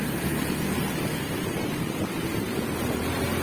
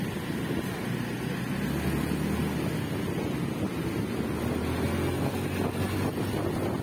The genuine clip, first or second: second